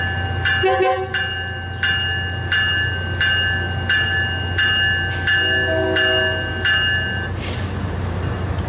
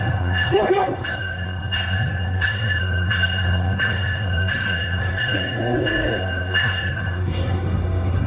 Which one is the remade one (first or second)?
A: second